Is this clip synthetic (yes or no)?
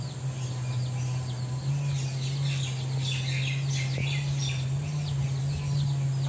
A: no